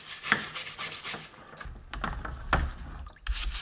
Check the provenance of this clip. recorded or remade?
recorded